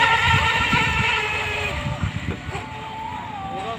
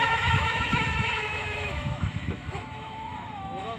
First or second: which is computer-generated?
second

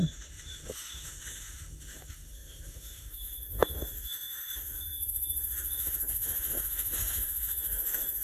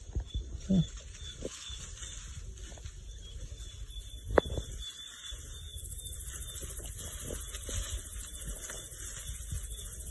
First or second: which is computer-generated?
first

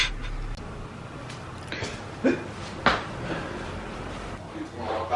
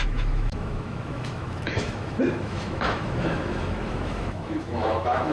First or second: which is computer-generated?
second